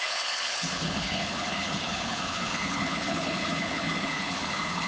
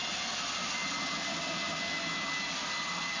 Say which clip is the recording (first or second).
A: second